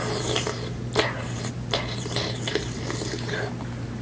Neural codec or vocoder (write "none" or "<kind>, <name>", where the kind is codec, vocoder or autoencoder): none